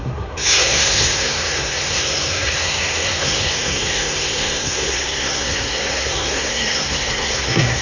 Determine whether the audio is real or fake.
fake